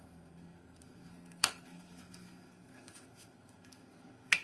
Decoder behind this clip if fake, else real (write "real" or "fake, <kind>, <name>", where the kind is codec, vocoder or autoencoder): fake, codec, SNAC